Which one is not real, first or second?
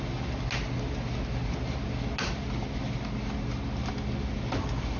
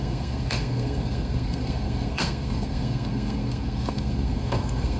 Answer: second